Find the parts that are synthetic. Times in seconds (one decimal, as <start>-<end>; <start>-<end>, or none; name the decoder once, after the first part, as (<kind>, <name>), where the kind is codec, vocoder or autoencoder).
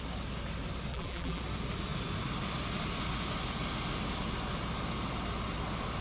0.9-1.4 (vocoder, BigVGAN v2)